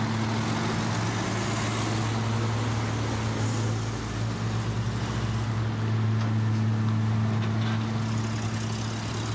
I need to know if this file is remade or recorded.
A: recorded